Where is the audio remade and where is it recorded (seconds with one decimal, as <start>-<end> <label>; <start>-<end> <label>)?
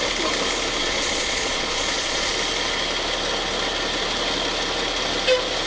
0.0-0.8 recorded; 0.8-2.3 remade; 2.3-5.7 recorded